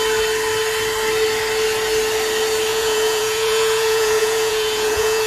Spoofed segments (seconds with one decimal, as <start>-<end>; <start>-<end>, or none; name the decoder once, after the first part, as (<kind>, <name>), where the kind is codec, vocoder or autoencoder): 2.7-5.3 (vocoder, Vocos)